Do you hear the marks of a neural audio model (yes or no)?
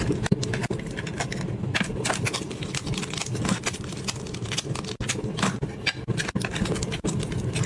no